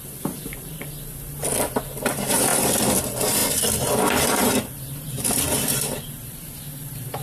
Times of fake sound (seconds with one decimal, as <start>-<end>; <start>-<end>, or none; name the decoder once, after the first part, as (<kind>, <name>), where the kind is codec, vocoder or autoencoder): 0.0-2.5 (vocoder, BigVGAN v2); 3.0-7.2